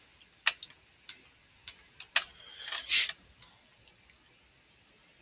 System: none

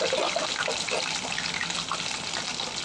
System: none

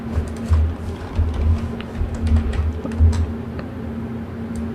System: none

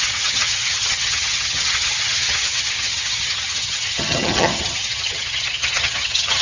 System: vocoder, HiFi-GAN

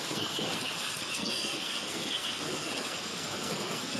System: codec, SNAC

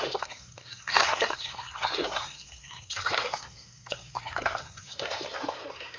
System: codec, SNAC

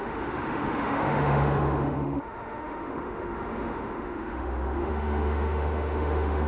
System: autoencoder, DAC-VAE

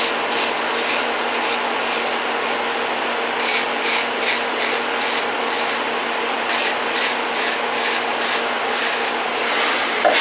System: none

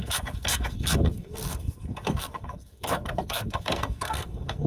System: codec, SNAC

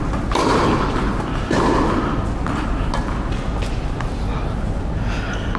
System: none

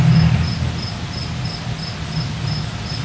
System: none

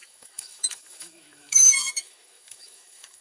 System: autoencoder, DAC-VAE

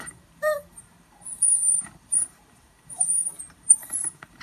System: vocoder, BigVGAN v2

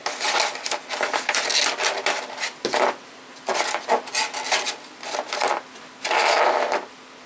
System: none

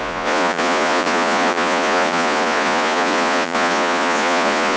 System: vocoder, Vocos